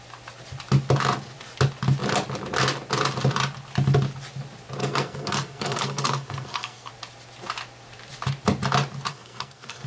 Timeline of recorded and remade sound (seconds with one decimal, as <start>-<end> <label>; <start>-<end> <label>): 0.0-4.8 recorded; 4.8-6.9 remade; 6.9-9.1 recorded; 9.1-9.9 remade